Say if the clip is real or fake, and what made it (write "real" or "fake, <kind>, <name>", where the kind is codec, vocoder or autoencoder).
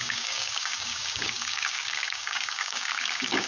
fake, codec, DAC